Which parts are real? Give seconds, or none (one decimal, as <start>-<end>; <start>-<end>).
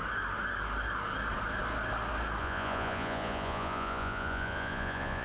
0.0-2.4